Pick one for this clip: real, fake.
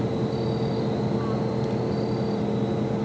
real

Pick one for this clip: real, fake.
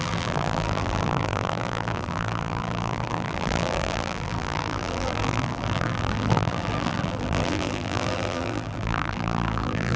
fake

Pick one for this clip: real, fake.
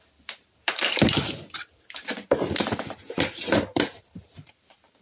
fake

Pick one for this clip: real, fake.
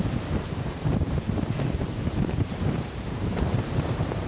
fake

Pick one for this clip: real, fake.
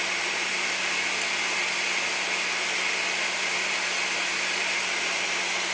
real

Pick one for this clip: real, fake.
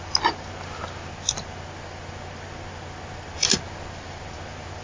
real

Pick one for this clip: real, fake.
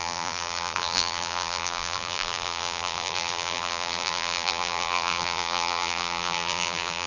fake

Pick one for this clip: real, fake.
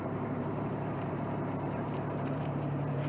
fake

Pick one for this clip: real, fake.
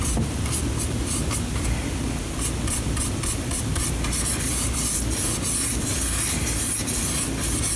fake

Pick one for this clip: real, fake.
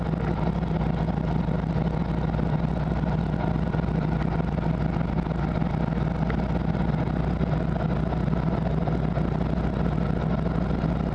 real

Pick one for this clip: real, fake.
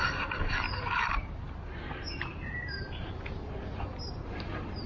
fake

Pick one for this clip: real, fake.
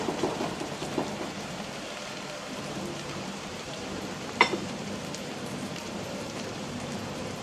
fake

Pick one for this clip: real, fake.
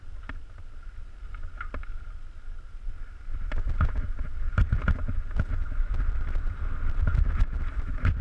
real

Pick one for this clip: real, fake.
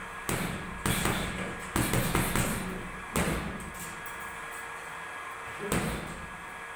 real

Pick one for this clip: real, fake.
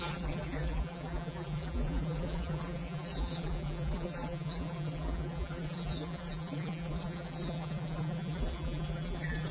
fake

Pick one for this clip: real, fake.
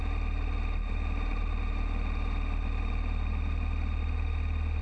fake